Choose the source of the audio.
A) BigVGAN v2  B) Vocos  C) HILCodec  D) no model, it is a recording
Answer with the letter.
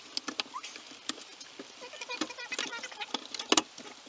D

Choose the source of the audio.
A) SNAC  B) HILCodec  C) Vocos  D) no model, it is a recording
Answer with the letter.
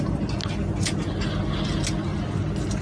D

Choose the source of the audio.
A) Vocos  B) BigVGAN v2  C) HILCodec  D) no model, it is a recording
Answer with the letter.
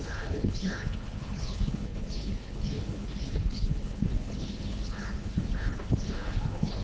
C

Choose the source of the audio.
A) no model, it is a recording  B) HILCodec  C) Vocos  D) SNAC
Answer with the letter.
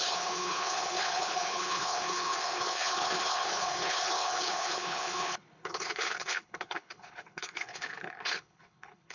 B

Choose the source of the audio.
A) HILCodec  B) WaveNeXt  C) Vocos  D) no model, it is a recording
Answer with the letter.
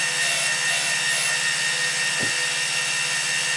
D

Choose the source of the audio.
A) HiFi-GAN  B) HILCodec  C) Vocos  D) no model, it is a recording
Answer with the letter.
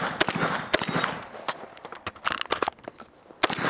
D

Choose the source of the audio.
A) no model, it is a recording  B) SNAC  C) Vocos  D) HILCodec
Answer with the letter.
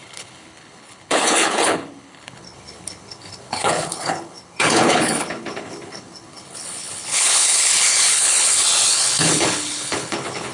D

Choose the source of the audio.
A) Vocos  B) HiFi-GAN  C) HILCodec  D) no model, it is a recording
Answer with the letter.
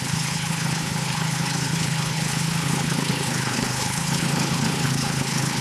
C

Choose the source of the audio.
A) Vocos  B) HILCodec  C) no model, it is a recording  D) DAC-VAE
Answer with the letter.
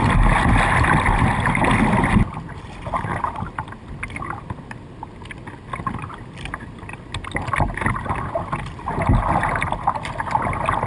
C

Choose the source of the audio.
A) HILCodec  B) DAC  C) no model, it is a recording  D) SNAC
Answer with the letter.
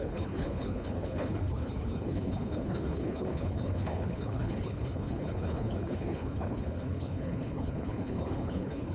A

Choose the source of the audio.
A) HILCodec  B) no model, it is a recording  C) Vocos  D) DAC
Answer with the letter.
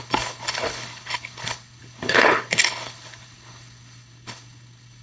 A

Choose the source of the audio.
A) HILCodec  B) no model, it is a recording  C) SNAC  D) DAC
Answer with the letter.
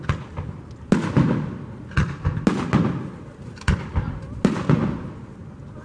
B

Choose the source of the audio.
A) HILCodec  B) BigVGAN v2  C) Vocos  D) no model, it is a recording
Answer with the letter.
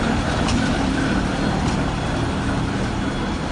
D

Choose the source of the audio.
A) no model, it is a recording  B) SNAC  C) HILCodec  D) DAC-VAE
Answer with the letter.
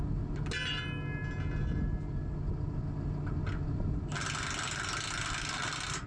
A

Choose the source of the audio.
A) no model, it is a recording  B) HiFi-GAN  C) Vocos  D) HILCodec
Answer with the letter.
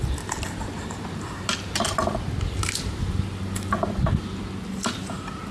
A